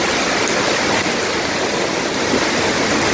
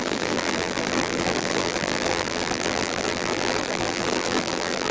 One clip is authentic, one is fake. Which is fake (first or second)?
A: second